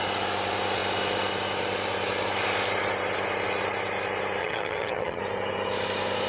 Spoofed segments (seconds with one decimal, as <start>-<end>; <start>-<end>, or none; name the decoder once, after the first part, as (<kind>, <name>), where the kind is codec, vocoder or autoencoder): 4.4-5.2 (vocoder, HiFi-GAN)